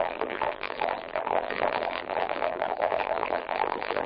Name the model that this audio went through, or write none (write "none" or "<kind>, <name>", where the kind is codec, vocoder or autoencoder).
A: vocoder, BigVGAN v2